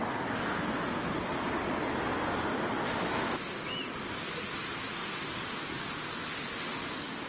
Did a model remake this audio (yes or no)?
no